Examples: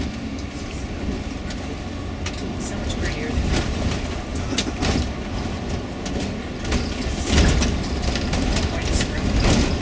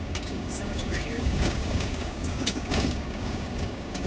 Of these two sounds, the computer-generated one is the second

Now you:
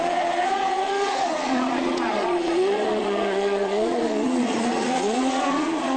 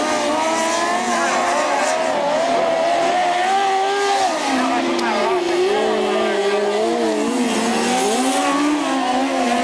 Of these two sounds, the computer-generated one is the first